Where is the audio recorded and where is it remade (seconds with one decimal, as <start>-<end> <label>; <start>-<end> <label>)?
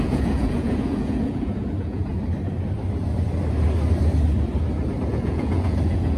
0.0-2.1 remade; 2.1-5.1 recorded; 5.1-6.2 remade